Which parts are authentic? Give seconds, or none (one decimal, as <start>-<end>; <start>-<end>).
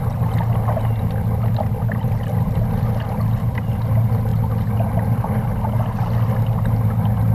0.0-7.3